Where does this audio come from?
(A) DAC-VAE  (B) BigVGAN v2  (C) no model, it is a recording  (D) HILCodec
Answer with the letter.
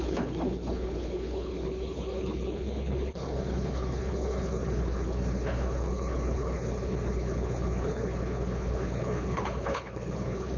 D